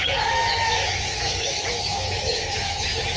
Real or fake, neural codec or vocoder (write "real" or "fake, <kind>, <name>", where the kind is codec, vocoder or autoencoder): fake, autoencoder, DAC-VAE